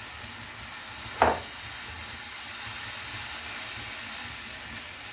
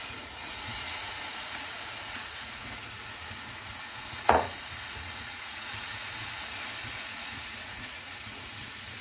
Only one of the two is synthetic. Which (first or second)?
second